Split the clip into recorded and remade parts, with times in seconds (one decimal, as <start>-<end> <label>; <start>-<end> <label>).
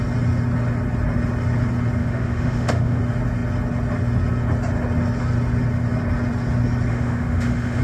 0.0-2.0 recorded; 2.0-3.0 remade; 3.0-6.9 recorded; 6.9-7.8 remade